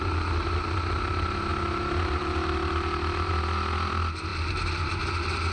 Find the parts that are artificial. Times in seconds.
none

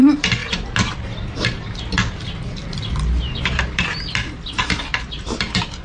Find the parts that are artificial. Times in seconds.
none